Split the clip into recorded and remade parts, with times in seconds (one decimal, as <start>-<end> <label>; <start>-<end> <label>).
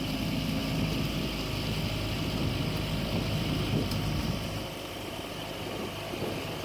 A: 0.0-6.6 recorded